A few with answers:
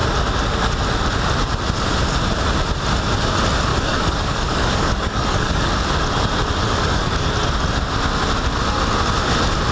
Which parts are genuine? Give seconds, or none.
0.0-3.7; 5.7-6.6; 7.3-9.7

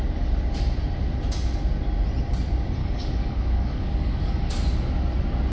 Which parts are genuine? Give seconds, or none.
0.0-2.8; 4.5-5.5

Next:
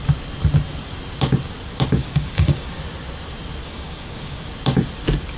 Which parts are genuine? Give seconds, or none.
0.0-2.0; 2.8-3.6; 4.5-5.4

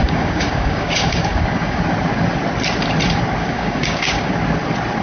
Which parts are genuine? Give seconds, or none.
1.8-3.4; 4.3-5.0